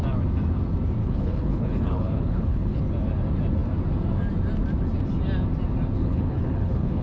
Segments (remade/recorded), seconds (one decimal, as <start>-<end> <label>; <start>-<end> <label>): 0.0-1.0 recorded; 1.0-2.8 remade; 2.8-6.0 recorded; 6.0-7.0 remade